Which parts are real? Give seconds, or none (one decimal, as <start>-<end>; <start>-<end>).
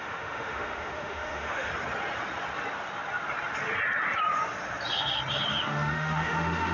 1.7-5.6